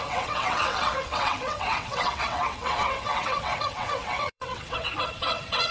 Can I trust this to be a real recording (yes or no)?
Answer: no